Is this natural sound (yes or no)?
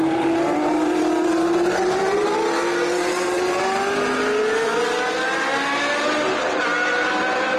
yes